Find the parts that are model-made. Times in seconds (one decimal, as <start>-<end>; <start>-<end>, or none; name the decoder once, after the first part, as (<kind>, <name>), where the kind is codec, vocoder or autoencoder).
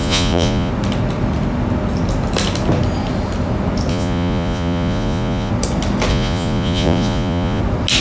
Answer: 0.0-0.7 (vocoder, Vocos); 3.9-5.5; 6.1-7.6